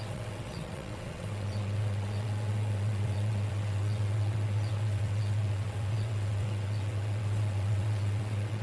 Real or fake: fake